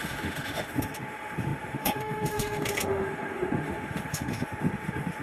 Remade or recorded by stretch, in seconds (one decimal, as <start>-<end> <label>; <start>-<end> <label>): 0.0-5.2 remade